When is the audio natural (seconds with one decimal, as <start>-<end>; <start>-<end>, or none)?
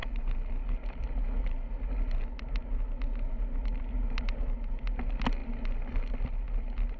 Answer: 0.0-7.0